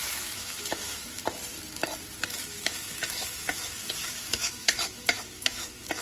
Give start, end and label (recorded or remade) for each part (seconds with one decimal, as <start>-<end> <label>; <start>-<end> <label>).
0.0-1.2 remade; 1.2-2.2 recorded; 2.2-6.0 remade